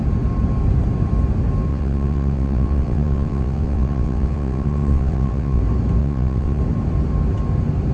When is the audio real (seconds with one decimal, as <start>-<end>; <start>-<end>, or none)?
0.0-1.7; 5.6-6.0; 6.6-7.9